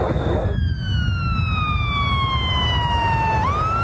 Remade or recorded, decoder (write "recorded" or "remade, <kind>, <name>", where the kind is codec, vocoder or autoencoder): recorded